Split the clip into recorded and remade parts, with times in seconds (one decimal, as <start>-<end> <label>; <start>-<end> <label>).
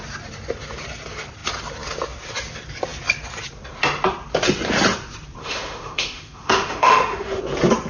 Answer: 0.0-5.4 recorded; 5.4-7.4 remade; 7.4-7.9 recorded